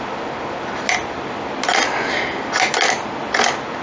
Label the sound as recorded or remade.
recorded